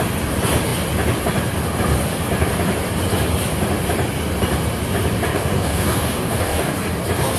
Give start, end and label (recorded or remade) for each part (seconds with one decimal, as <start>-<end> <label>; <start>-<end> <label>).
0.0-5.3 recorded; 5.3-6.7 remade; 6.7-7.4 recorded